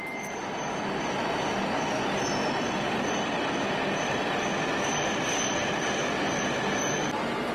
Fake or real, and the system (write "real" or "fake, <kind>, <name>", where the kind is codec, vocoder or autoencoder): real